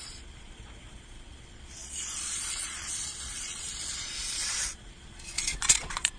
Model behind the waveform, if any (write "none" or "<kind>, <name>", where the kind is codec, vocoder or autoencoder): vocoder, Vocos